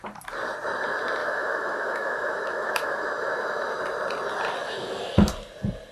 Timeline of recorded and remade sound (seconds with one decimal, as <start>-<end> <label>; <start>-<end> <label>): 0.0-1.2 recorded; 1.2-3.8 remade; 3.8-4.6 recorded; 4.6-5.3 remade; 5.3-5.9 recorded